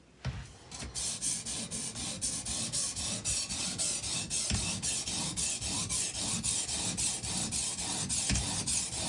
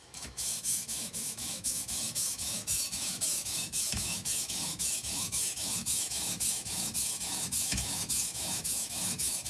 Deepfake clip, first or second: second